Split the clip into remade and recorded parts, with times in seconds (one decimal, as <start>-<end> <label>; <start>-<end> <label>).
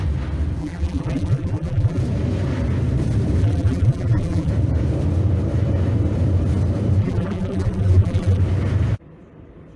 0.0-0.6 recorded; 0.6-2.0 remade; 2.0-3.4 recorded; 3.4-4.5 remade; 4.5-7.0 recorded; 7.0-8.4 remade; 8.4-9.8 recorded